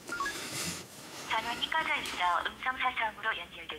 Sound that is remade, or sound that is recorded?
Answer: remade